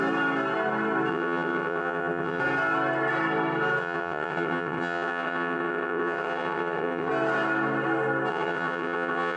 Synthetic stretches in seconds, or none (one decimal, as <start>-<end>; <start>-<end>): 1.1-2.4; 3.8-7.1; 8.3-9.4